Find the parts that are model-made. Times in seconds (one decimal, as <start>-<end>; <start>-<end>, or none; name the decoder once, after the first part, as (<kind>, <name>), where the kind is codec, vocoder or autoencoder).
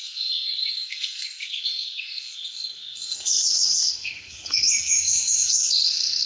0.0-6.3 (codec, SNAC)